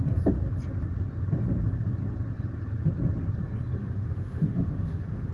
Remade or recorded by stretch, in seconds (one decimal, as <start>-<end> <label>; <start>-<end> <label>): 0.0-3.8 recorded; 3.8-5.3 remade